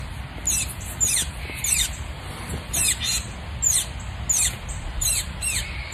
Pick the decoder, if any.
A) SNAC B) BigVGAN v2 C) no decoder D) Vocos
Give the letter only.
C